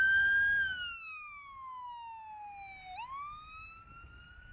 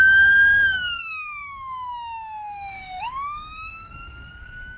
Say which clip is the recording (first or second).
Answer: first